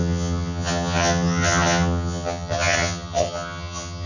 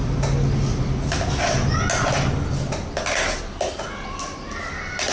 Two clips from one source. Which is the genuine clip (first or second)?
second